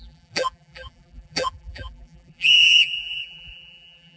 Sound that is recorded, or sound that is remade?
remade